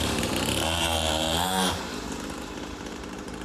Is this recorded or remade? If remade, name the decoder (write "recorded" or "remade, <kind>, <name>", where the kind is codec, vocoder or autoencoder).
remade, vocoder, BigVGAN v2